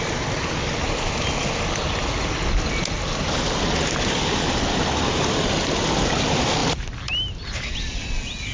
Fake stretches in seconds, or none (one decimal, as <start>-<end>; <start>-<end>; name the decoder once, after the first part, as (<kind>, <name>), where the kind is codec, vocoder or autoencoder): none